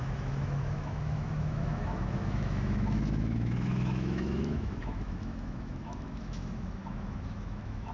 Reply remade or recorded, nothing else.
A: remade